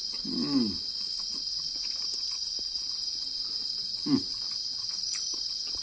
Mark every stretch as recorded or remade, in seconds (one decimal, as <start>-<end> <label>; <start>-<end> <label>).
0.0-5.8 recorded